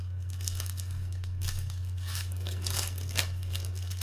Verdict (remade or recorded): remade